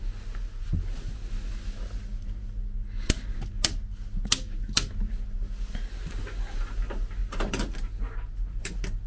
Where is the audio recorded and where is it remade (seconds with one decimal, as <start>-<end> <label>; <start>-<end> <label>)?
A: 0.0-9.1 recorded